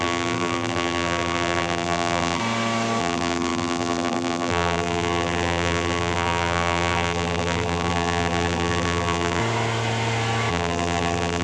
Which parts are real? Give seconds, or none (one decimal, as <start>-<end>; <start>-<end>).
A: 2.4-3.0; 9.4-10.5